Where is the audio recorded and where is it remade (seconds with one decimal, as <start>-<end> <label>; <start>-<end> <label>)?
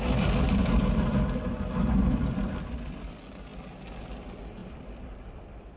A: 0.0-0.6 recorded; 0.6-3.1 remade; 3.1-4.6 recorded; 4.6-5.8 remade